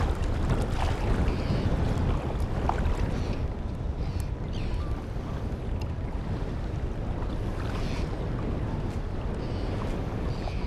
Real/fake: fake